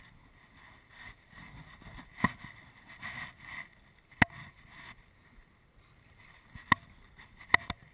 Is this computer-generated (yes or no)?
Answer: no